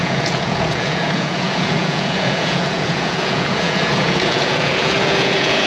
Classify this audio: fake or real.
fake